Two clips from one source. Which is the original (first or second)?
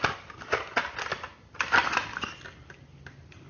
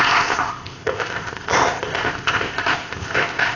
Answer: first